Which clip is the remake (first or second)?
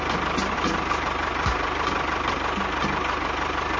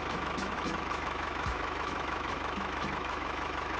second